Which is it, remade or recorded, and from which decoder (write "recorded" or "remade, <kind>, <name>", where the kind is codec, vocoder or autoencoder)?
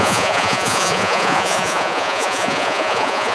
remade, vocoder, Vocos